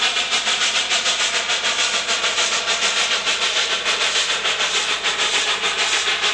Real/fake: real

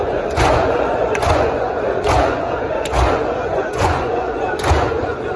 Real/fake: fake